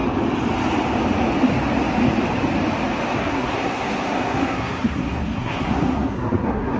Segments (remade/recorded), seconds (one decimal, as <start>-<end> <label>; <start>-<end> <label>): 0.0-3.1 recorded; 3.1-6.8 remade